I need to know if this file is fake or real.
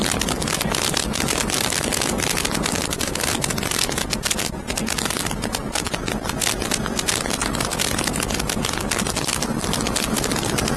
real